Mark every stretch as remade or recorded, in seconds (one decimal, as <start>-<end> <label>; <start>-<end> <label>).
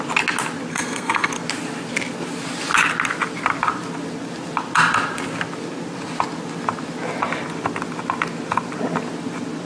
0.0-0.7 recorded; 0.7-1.3 remade; 1.3-9.6 recorded